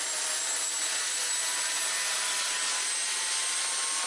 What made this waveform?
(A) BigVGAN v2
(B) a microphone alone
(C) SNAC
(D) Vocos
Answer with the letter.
B